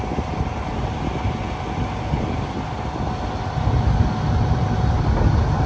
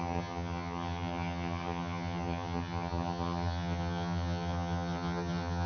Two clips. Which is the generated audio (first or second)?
second